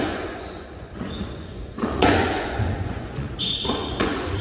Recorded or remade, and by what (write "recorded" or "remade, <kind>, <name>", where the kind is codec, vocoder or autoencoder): remade, vocoder, Vocos